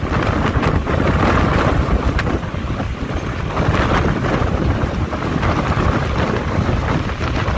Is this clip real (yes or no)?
yes